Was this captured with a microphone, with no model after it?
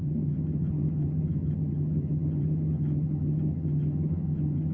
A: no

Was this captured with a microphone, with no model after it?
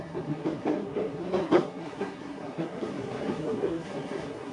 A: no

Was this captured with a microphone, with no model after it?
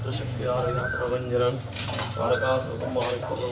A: yes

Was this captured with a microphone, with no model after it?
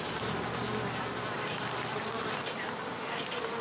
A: yes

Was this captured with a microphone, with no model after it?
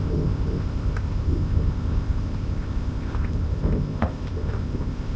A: no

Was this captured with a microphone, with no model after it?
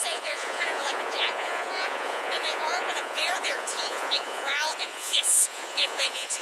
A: no